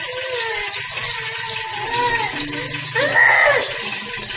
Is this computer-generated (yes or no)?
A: no